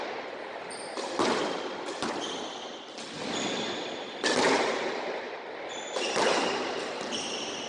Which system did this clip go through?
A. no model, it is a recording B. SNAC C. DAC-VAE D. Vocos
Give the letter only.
A